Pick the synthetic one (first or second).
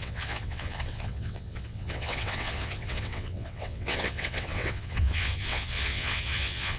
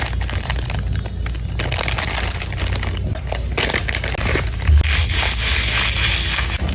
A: first